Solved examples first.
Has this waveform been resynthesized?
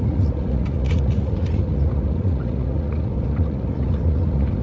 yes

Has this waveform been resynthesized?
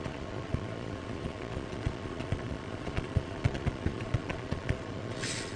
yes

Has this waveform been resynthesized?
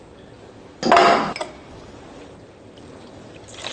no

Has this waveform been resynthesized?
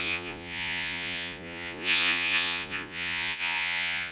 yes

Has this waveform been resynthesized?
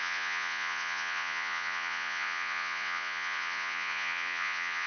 yes